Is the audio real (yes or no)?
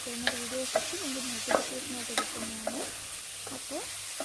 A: yes